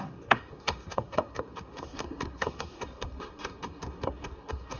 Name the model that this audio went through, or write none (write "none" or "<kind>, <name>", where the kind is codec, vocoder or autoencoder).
codec, SNAC